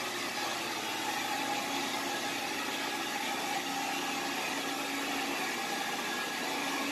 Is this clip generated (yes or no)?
no